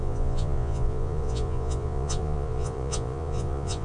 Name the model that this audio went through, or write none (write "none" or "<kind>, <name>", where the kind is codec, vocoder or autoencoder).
vocoder, Vocos